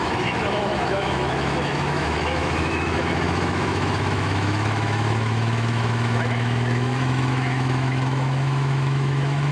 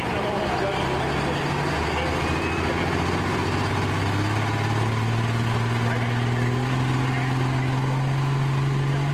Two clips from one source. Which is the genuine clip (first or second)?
second